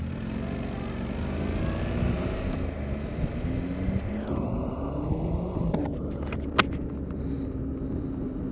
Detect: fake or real real